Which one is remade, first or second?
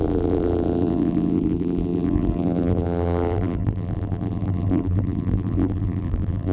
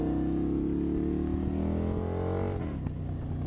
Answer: first